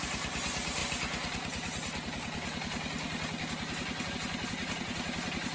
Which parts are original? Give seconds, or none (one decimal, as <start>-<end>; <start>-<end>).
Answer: 0.8-4.1